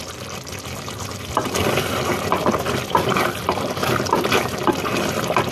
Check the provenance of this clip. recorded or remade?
remade